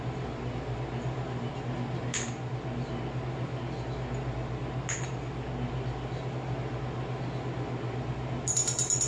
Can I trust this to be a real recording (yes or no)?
yes